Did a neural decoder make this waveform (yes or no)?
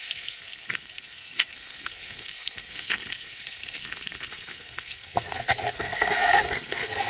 yes